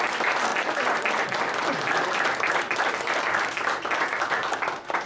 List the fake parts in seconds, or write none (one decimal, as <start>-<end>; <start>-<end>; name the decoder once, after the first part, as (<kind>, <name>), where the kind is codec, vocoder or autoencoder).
none